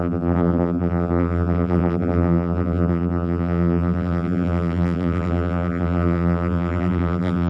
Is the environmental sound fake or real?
fake